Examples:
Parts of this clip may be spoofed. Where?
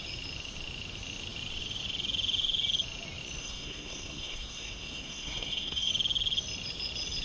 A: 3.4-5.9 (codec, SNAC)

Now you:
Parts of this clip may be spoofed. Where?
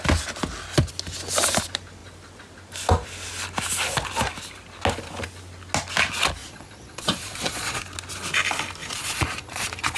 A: 6.4-7.8 (vocoder, Vocos); 8.8-10.0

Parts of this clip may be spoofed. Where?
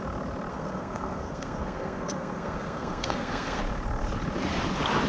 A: 0.5-3.6 (codec, SNAC)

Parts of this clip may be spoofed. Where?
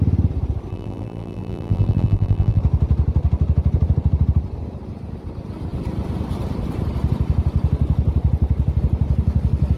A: 0.7-2.6 (vocoder, BigVGAN v2)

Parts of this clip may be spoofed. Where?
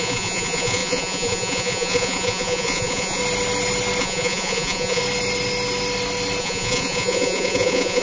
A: 0.0-3.2 (vocoder, Vocos); 4.0-5.0; 6.4-8.0